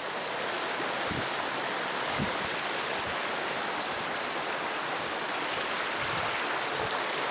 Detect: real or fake real